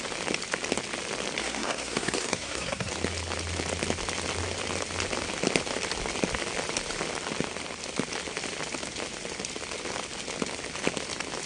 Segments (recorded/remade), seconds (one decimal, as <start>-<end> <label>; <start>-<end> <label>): 0.0-1.4 recorded; 1.4-2.9 remade; 2.9-11.5 recorded